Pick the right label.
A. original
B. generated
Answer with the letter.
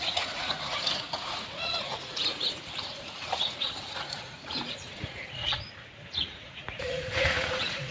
B